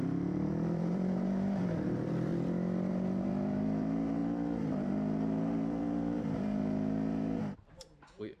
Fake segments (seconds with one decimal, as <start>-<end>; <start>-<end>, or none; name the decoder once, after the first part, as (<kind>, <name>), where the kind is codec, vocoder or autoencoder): 0.0-2.3 (vocoder, BigVGAN v2); 2.9-8.4